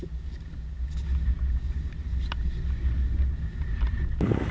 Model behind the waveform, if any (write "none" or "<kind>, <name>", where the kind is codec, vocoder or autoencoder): none